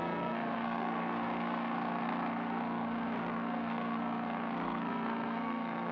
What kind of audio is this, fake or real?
fake